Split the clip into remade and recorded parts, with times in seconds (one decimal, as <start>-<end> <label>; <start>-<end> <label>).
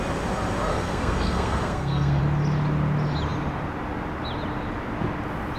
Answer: 0.0-0.7 recorded; 0.7-2.2 remade; 2.2-5.6 recorded